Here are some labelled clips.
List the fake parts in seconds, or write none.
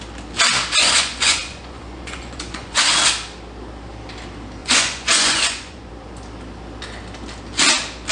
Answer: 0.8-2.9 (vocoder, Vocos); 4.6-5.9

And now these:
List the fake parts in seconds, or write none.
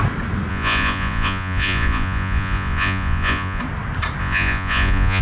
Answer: 0.5-3.6 (vocoder, Vocos); 4.2-5.2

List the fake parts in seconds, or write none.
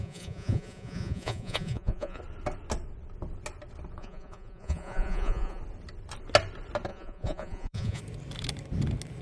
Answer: 0.0-2.2 (vocoder, Vocos); 4.0-5.6; 6.9-8.0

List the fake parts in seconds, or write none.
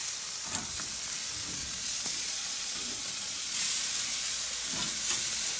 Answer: 1.6-3.7 (vocoder, Vocos)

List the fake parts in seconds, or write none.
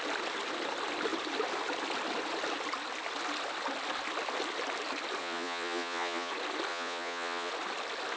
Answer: 5.2-6.3 (vocoder, Vocos); 6.7-7.5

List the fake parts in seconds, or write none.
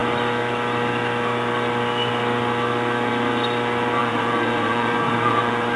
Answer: 4.0-5.8 (vocoder, Vocos)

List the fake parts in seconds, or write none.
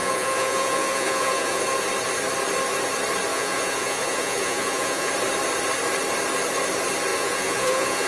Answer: 0.0-1.6 (vocoder, Vocos); 3.3-5.1; 7.1-8.1